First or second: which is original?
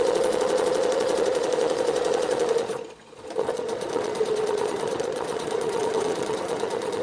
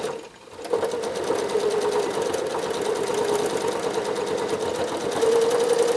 second